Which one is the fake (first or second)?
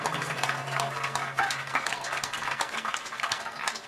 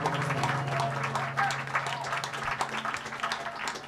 first